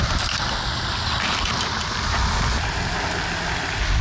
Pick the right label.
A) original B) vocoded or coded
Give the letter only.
A